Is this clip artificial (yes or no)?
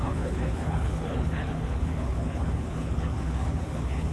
yes